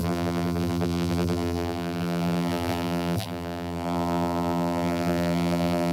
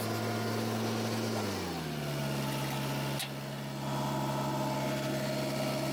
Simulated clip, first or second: first